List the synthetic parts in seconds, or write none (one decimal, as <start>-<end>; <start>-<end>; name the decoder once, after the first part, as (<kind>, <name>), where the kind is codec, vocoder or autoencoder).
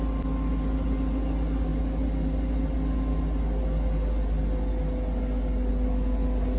none